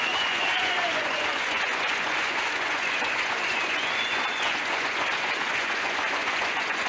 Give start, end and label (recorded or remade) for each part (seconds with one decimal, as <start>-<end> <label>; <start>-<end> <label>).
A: 0.0-6.9 remade